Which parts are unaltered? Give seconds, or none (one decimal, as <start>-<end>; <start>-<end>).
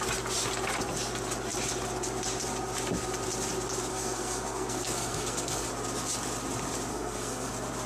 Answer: 0.0-3.9; 5.7-6.9; 7.5-7.9